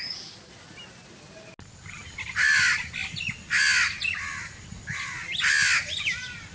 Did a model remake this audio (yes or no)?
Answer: no